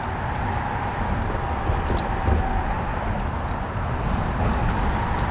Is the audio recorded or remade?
recorded